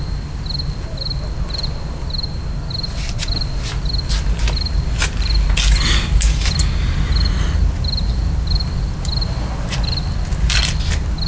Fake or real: real